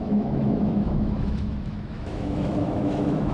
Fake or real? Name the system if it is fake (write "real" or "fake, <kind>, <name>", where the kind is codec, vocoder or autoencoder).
fake, autoencoder, DAC-VAE